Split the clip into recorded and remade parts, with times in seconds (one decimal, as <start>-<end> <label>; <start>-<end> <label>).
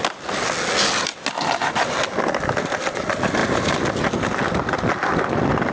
0.0-5.7 recorded